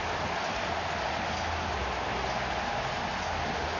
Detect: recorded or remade recorded